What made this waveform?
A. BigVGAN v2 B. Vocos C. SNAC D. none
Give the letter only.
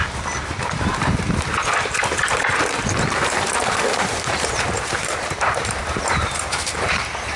A